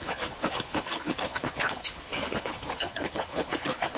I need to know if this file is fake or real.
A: fake